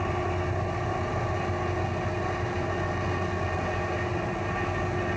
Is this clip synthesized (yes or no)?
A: no